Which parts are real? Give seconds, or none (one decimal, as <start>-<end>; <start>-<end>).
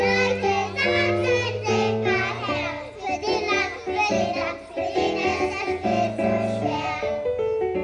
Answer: 0.0-7.8